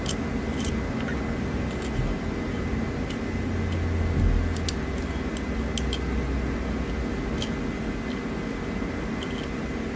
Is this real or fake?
real